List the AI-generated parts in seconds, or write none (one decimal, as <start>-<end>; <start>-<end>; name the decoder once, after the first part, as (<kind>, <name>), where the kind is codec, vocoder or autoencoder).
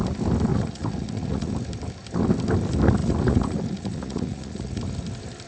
0.5-1.5 (vocoder, Vocos); 3.0-4.8